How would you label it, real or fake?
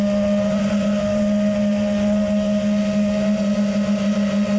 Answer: real